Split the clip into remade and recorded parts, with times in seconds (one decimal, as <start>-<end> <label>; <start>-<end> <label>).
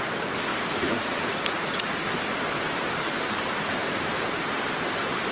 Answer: 0.0-0.5 recorded; 0.5-2.1 remade; 2.1-5.3 recorded